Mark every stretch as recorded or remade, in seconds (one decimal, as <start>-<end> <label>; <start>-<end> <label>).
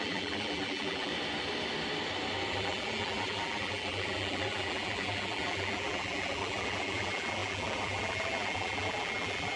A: 0.0-1.1 remade; 1.1-2.5 recorded; 2.5-9.6 remade